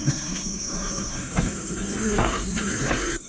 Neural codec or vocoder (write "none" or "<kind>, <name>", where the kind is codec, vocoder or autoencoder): codec, SNAC